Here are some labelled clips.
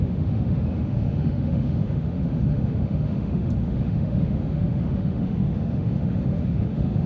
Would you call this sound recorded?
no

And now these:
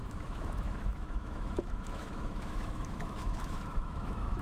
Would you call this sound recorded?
no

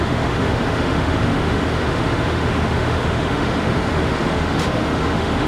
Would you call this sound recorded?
no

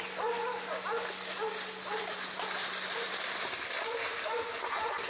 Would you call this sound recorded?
yes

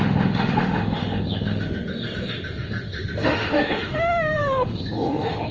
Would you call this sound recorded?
no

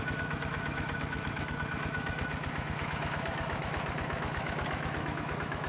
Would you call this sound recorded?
no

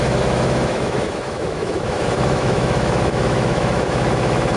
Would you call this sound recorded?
no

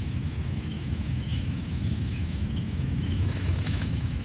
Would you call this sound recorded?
no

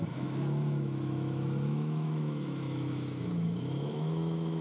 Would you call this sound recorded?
no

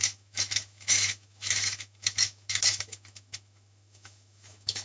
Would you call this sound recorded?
no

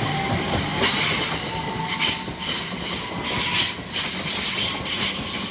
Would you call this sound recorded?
yes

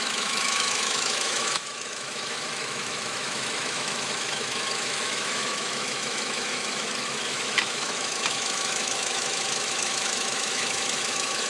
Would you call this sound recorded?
no